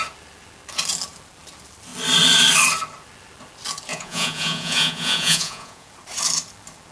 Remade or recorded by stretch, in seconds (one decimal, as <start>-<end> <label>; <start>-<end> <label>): 0.0-3.9 recorded; 3.9-5.9 remade; 5.9-6.9 recorded